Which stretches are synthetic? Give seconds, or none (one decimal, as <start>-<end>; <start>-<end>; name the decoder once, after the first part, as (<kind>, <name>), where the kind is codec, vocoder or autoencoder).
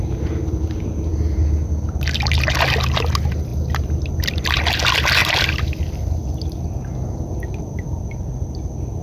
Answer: none